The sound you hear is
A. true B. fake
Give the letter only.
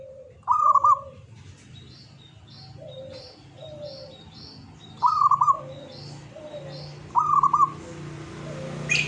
A